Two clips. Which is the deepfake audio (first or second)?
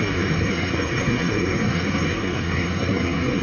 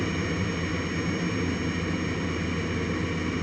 first